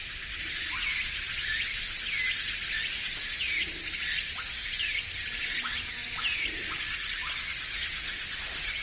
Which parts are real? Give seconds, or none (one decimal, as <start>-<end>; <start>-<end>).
0.0-8.8

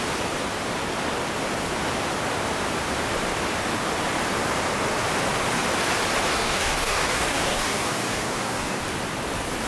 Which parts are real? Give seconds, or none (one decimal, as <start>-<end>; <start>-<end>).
0.0-6.3; 8.8-9.7

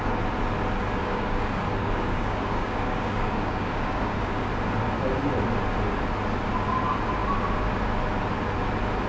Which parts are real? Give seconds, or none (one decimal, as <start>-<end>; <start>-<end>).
0.0-1.0; 4.5-9.1

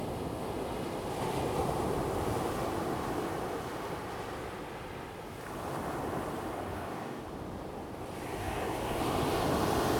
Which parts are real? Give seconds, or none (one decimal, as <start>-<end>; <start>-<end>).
0.0-6.7; 7.2-8.4; 9.0-10.0

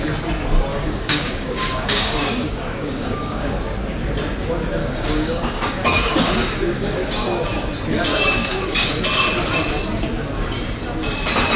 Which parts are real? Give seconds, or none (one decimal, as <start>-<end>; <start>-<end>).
0.0-0.7; 3.6-4.8; 7.7-8.1; 8.9-11.6

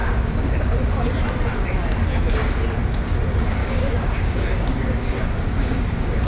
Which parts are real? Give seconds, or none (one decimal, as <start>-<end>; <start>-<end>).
0.6-3.6

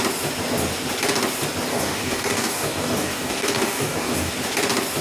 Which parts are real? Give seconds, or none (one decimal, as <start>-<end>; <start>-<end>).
0.0-1.7; 4.3-5.0